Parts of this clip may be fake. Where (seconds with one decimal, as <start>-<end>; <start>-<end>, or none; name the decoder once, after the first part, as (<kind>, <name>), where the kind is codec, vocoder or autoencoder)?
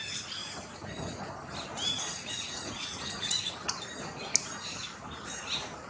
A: 0.4-1.2 (vocoder, Vocos); 1.7-3.7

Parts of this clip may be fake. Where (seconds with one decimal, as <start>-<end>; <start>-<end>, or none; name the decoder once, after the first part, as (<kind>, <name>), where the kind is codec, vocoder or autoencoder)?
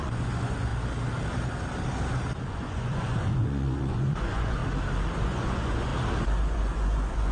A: 0.0-0.7 (vocoder, Vocos); 2.5-4.6; 5.2-5.9; 6.4-7.3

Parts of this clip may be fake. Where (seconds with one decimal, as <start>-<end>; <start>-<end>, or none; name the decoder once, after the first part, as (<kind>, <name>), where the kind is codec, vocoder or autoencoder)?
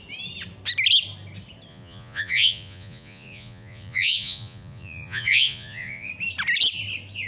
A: 1.7-6.1 (vocoder, Vocos)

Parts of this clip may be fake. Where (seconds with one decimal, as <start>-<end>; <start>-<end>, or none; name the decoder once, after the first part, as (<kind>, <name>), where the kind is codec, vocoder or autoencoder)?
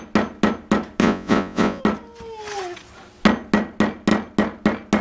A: 1.0-1.8 (vocoder, Vocos)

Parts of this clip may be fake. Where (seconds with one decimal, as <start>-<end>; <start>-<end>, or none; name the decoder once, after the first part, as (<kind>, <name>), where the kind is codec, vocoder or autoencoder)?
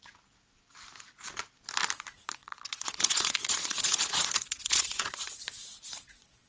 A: 2.4-6.5 (vocoder, Vocos)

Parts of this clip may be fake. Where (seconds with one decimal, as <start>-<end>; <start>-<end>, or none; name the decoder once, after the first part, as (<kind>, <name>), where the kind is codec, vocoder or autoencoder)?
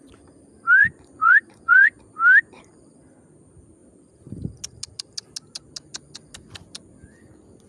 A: 0.8-2.0 (vocoder, Vocos)